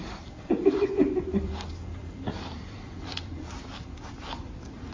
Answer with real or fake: fake